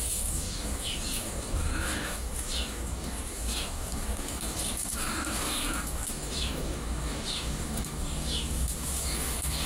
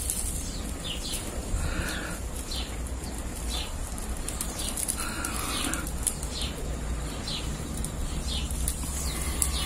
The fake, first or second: first